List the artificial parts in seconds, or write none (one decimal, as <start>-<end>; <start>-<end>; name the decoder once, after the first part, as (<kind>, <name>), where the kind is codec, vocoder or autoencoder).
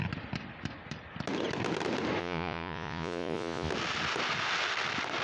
2.2-3.7 (vocoder, Vocos)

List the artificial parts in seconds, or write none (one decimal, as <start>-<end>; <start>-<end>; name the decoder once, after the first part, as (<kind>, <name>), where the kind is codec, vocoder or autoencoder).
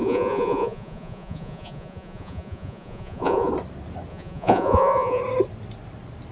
0.0-3.5 (vocoder, Vocos); 4.1-5.2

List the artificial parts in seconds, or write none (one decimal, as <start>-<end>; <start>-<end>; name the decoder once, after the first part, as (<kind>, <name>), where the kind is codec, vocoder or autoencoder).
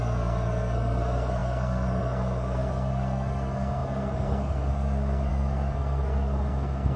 0.0-7.0 (codec, SNAC)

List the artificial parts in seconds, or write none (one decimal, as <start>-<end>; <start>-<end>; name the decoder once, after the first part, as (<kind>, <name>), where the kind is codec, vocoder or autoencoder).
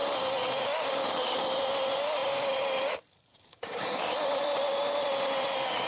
3.3-4.0 (codec, DAC)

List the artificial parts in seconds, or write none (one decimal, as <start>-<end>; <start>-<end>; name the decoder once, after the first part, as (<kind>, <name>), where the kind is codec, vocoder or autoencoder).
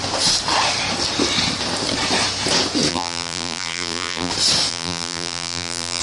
2.9-4.3 (vocoder, BigVGAN v2); 4.7-6.0